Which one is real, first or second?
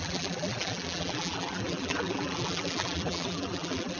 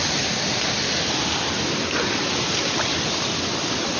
second